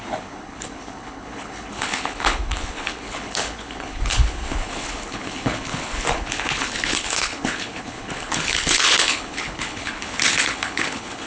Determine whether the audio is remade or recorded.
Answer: remade